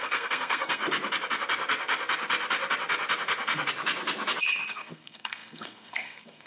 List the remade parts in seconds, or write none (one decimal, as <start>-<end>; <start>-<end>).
0.0-0.8; 4.7-6.5